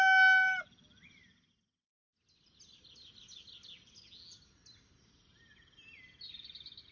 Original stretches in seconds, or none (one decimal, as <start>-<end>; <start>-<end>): 0.0-6.9